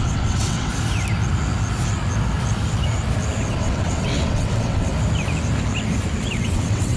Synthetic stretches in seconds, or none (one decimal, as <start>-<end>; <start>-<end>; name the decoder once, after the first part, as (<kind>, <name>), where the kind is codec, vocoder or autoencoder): 0.0-0.7 (vocoder, WaveNeXt); 3.5-4.9; 6.3-7.0